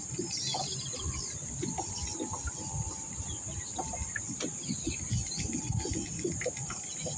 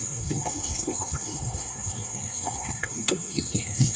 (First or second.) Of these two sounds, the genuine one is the first